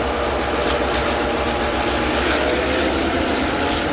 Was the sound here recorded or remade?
recorded